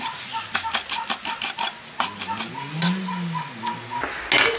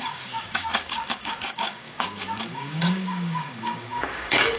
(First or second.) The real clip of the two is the first